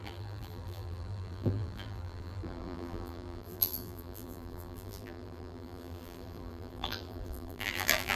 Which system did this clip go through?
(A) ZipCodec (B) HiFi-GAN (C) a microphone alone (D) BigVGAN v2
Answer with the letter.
D